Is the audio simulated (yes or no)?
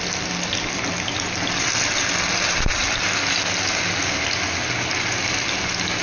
no